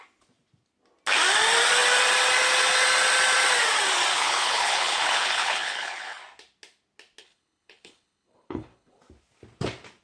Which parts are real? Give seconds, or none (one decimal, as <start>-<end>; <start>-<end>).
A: 0.0-4.1; 6.2-7.2; 9.0-10.0